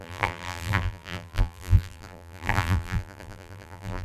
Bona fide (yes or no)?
no